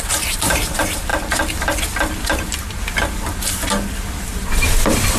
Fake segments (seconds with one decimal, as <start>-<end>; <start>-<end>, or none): 0.0-1.1; 4.2-5.2